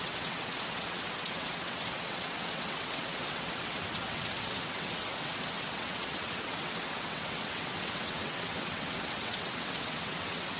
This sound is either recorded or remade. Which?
remade